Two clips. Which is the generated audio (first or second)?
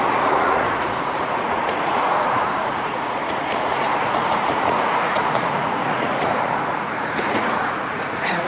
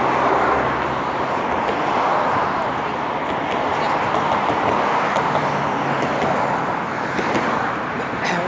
first